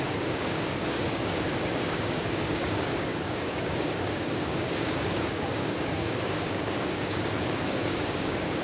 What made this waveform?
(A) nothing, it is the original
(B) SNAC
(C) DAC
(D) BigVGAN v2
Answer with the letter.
C